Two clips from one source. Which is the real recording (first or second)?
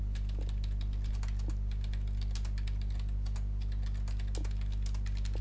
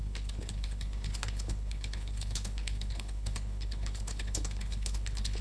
first